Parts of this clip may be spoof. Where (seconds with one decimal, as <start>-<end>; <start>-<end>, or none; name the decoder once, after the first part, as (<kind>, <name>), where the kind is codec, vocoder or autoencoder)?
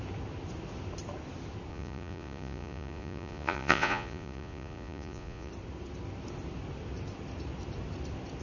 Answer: 1.7-5.5 (vocoder, Vocos)